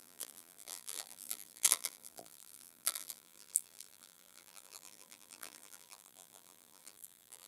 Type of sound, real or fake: fake